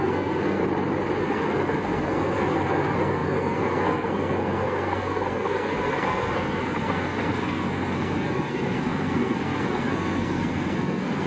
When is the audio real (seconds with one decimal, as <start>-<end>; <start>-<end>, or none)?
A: 0.6-1.2